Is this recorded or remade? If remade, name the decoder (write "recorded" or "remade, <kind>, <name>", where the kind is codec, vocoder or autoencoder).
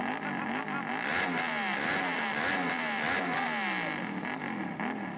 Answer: recorded